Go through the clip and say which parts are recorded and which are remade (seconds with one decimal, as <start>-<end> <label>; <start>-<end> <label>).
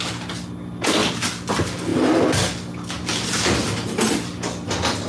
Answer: 0.0-5.1 recorded